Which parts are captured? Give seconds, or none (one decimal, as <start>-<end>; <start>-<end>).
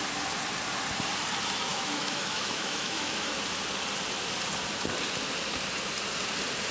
0.0-1.7; 3.4-6.7